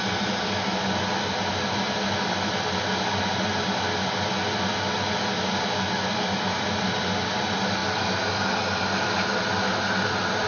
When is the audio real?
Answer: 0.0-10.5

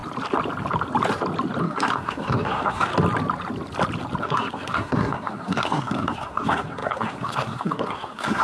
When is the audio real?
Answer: 0.0-1.6; 2.9-4.2